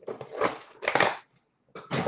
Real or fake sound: real